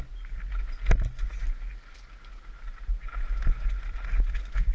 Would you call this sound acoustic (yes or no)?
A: yes